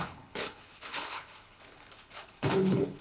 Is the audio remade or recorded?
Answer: remade